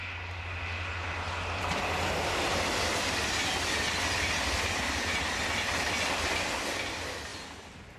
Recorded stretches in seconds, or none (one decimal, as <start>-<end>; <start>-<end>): 0.0-8.0

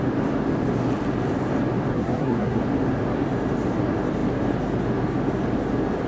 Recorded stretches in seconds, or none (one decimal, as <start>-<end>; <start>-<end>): 0.0-1.9; 2.6-6.1

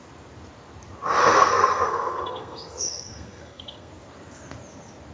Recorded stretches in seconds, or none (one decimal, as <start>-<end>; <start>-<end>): 0.0-1.2; 3.9-5.1

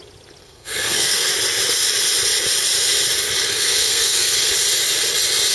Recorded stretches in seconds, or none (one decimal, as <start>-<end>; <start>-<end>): 0.0-0.4; 1.3-3.4; 4.5-5.5

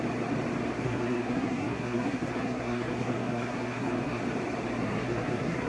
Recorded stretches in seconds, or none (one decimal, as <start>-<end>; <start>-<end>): 0.0-0.8; 4.2-4.8